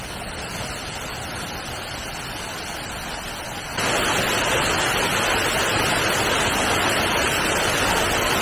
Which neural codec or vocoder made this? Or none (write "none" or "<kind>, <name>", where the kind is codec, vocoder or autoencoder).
none